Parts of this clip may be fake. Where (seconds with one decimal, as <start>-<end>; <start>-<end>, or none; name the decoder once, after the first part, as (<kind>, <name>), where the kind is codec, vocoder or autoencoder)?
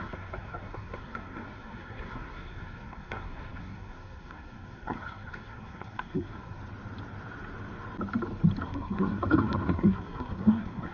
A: 0.0-6.6 (codec, SNAC); 8.6-10.9